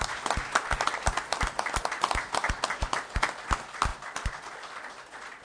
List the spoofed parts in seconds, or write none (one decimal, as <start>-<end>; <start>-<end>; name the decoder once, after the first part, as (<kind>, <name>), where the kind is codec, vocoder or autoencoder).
1.2-5.4 (vocoder, BigVGAN v2)